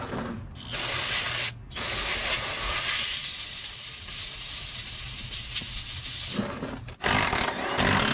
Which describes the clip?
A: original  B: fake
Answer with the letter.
A